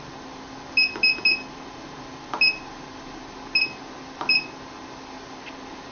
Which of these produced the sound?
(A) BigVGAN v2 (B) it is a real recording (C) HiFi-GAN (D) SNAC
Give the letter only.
B